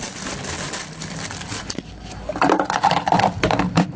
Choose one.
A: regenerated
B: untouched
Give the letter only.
A